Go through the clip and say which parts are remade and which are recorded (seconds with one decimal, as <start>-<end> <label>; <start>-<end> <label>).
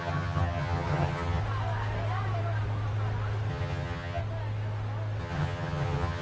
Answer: 0.0-1.4 remade; 1.4-3.5 recorded; 3.5-4.2 remade; 4.2-5.2 recorded; 5.2-6.2 remade